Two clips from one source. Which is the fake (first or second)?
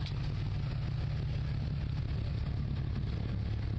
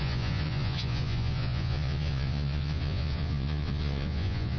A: second